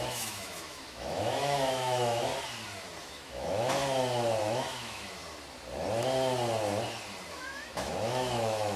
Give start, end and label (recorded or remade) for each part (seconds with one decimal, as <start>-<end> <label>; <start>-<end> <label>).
0.0-2.3 remade; 2.3-3.0 recorded; 3.0-3.8 remade; 3.8-4.4 recorded; 4.4-5.2 remade; 5.2-7.3 recorded; 7.3-8.8 remade